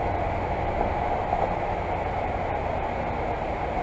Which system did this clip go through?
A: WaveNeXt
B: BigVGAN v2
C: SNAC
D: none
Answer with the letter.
D